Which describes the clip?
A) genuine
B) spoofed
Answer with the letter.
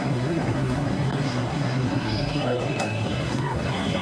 B